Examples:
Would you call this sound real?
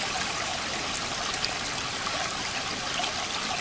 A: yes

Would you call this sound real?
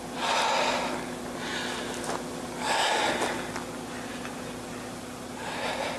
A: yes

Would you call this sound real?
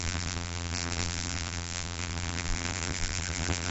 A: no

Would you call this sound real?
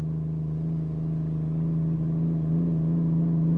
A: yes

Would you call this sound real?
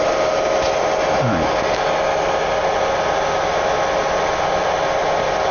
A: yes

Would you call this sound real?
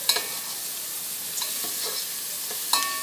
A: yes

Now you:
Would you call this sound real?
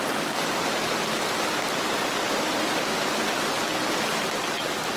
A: yes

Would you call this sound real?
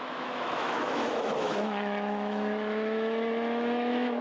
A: no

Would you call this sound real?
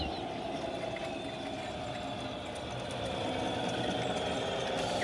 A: yes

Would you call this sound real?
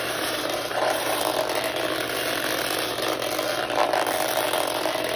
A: yes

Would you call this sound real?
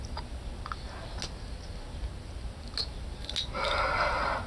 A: yes